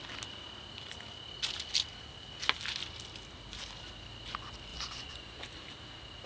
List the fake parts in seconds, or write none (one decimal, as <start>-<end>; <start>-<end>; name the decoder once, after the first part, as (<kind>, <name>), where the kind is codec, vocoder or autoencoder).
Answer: 4.7-5.4 (vocoder, Vocos)